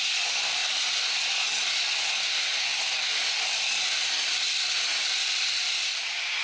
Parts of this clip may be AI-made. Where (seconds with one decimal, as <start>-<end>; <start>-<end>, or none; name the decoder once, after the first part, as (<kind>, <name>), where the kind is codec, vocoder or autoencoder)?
none

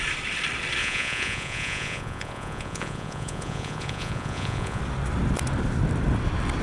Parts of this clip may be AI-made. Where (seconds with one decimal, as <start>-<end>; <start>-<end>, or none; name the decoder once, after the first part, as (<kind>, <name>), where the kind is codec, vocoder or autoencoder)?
0.8-4.8 (vocoder, Vocos)

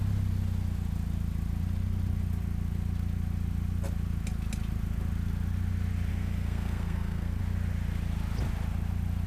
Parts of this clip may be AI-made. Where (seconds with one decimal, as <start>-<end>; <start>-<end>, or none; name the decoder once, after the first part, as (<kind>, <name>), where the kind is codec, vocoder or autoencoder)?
6.1-7.4 (codec, SNAC)

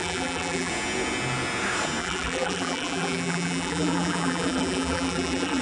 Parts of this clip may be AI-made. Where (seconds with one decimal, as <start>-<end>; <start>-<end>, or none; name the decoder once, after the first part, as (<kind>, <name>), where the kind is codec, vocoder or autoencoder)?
0.0-0.7 (vocoder, BigVGAN v2); 2.0-5.6

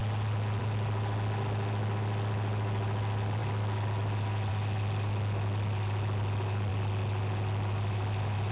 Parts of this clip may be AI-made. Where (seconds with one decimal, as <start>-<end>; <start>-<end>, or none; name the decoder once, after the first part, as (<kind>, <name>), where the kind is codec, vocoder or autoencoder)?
none

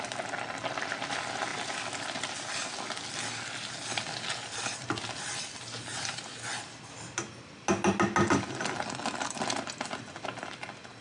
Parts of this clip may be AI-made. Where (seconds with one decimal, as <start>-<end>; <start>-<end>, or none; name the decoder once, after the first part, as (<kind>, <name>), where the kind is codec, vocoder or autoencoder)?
none